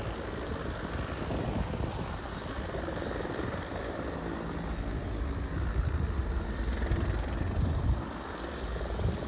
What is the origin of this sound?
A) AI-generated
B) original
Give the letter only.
B